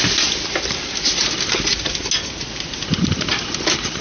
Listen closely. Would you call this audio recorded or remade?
recorded